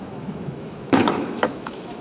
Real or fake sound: fake